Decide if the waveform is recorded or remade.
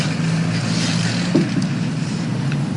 recorded